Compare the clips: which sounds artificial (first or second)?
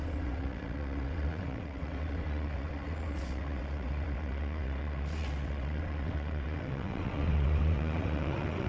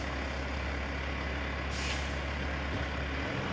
first